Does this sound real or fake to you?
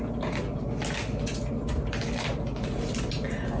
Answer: real